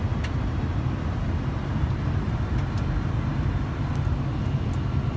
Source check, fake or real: real